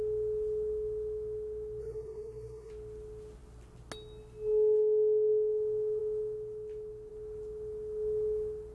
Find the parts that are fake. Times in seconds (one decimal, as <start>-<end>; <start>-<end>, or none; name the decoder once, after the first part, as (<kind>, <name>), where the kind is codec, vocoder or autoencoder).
1.8-2.7 (codec, SNAC)